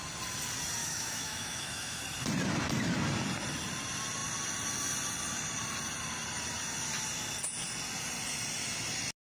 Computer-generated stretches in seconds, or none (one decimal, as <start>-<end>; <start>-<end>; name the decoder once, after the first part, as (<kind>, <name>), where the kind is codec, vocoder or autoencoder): 0.8-2.0 (autoencoder, DAC-VAE)